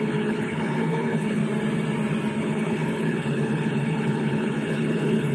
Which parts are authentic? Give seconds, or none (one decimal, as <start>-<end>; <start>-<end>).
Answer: 1.4-2.4